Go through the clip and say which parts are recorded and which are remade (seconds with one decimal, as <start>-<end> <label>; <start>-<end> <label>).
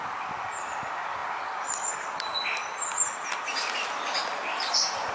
0.0-5.1 recorded